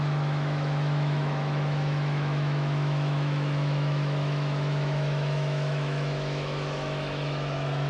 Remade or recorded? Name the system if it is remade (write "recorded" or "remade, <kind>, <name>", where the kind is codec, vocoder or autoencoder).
remade, autoencoder, DAC-VAE